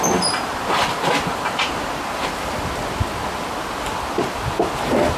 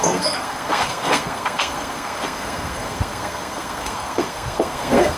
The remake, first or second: second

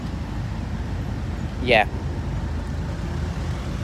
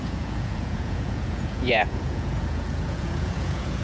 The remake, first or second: second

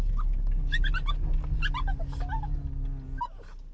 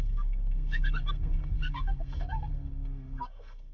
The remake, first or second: second